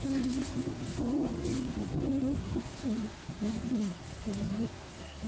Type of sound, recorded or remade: remade